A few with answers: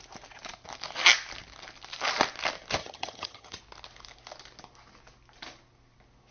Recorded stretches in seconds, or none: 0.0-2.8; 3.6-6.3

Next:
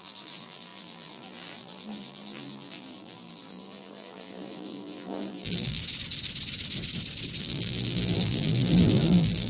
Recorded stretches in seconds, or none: 5.8-7.4

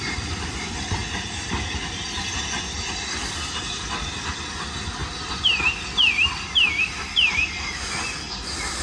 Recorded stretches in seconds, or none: 0.0-5.0; 7.3-8.8

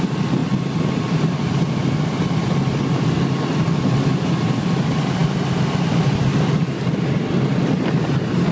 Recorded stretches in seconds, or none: 0.0-8.5

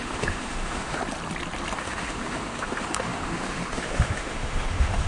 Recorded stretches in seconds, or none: 1.0-1.8

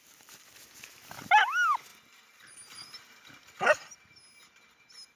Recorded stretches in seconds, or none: 0.0-5.2